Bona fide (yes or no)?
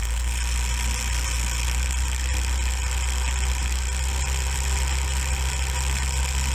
yes